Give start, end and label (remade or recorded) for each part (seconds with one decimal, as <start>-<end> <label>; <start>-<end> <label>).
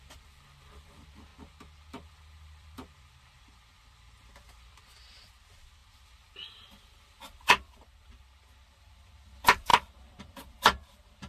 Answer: 0.0-1.3 remade; 1.3-1.9 recorded; 1.9-11.3 remade